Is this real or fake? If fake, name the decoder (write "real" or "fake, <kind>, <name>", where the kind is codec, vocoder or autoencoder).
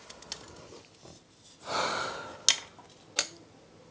real